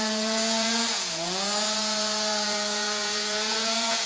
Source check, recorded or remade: remade